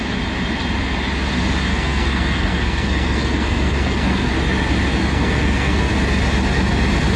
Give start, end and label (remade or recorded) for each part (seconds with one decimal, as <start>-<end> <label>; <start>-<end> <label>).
0.0-1.7 recorded; 1.7-4.3 remade; 4.3-5.0 recorded; 5.0-5.9 remade; 5.9-7.2 recorded